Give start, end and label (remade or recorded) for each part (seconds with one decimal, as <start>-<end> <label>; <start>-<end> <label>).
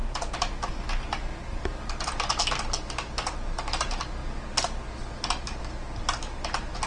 0.0-6.9 recorded